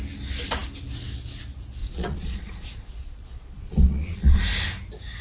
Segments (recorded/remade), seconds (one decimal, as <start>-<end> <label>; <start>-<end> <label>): 0.0-1.8 recorded; 1.8-4.4 remade; 4.4-5.2 recorded

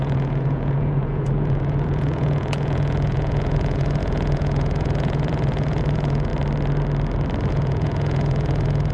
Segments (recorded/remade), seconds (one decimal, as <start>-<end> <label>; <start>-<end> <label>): 0.0-6.3 remade; 6.3-7.5 recorded; 7.5-8.9 remade

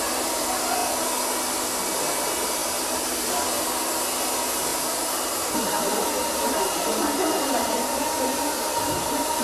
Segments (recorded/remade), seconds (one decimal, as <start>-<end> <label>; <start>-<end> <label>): 0.0-2.6 recorded; 2.6-3.7 remade; 3.7-4.7 recorded; 4.7-9.4 remade

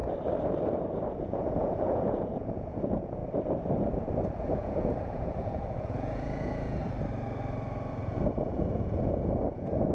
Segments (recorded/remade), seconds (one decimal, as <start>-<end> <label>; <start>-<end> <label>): 0.0-1.2 recorded; 1.2-3.2 remade; 3.2-4.4 recorded; 4.4-6.8 remade; 6.8-7.9 recorded; 7.9-9.9 remade

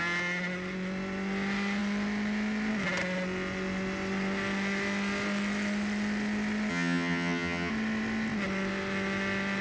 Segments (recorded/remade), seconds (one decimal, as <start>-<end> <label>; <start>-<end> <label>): 0.0-6.7 recorded; 6.7-7.7 remade; 7.7-9.6 recorded

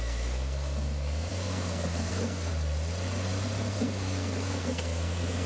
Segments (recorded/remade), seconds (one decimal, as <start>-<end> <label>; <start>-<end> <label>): 0.0-2.5 remade; 2.5-3.7 recorded; 3.7-5.5 remade

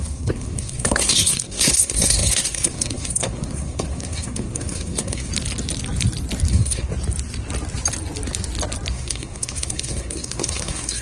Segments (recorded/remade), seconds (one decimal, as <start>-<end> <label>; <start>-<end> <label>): 0.0-5.3 remade; 5.3-6.5 recorded; 6.5-6.9 remade; 6.9-8.9 recorded; 8.9-11.0 remade